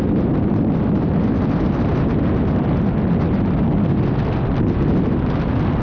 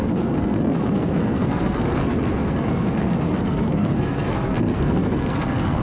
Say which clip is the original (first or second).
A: first